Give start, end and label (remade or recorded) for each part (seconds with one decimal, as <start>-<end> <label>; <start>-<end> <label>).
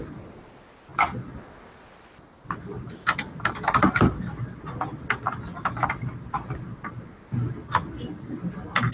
0.0-8.9 recorded